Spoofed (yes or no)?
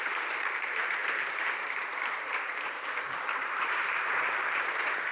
yes